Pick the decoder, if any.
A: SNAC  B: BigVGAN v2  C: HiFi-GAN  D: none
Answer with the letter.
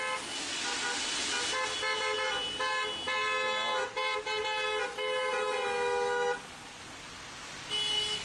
D